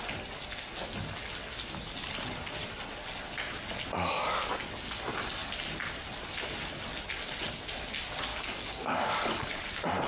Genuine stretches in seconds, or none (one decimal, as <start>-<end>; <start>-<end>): 0.0-8.3; 9.6-10.1